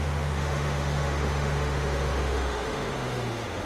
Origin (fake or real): fake